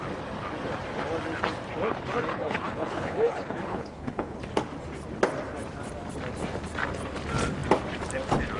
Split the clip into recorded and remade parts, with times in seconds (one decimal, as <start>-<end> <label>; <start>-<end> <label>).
0.0-2.3 recorded; 2.3-4.4 remade; 4.4-8.6 recorded